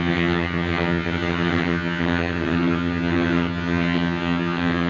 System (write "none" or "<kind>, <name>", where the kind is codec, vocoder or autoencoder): vocoder, HiFi-GAN